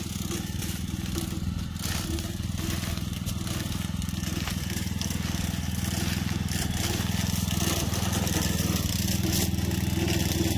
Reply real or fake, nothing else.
real